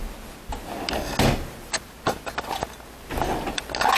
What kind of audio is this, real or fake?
real